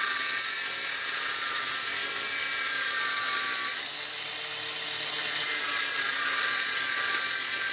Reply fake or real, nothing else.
real